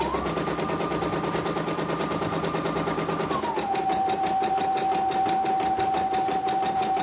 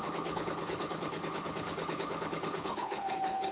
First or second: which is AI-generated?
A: second